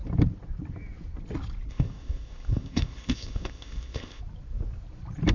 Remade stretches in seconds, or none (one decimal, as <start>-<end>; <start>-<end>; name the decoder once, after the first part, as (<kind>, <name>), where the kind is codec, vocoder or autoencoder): 1.7-4.2 (codec, ZipCodec)

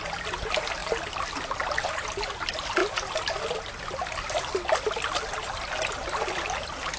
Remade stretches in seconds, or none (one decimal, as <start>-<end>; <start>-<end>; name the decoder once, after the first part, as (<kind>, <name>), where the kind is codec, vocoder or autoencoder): none